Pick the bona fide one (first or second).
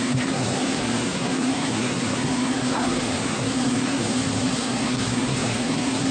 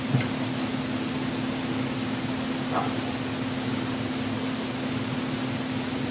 second